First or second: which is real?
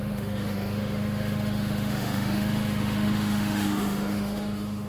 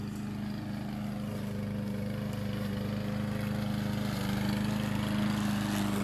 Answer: second